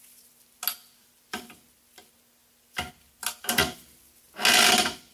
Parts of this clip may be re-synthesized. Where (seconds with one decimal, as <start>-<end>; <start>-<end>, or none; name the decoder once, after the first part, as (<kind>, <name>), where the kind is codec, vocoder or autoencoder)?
0.8-1.6 (vocoder, BigVGAN v2); 2.4-2.9

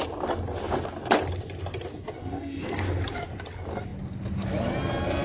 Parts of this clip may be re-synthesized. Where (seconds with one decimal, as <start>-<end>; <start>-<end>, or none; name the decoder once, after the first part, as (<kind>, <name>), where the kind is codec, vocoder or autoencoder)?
2.2-2.9 (codec, SNAC)

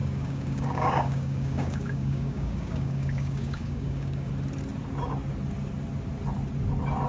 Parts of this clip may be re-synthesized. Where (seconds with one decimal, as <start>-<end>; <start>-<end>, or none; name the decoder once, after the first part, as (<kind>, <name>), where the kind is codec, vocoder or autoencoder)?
0.0-4.3 (codec, DAC)

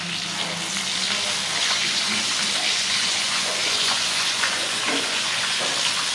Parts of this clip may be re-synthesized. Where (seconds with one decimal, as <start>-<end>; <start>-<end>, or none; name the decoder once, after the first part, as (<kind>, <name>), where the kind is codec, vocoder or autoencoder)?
1.6-2.3 (vocoder, Vocos); 2.7-5.6

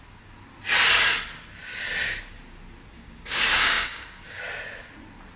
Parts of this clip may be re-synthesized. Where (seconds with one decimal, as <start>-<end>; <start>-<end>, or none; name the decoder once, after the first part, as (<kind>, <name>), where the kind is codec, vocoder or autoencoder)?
2.9-4.4 (codec, DAC)

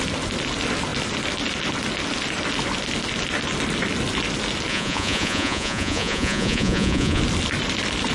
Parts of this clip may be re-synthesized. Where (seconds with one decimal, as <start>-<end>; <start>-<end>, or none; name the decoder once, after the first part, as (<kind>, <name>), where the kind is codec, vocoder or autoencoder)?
4.7-7.2 (vocoder, Vocos)

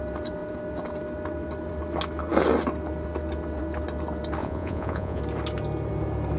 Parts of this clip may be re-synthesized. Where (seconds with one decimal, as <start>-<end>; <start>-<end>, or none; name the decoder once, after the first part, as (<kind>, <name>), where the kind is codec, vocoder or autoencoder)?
4.4-5.2 (vocoder, Vocos)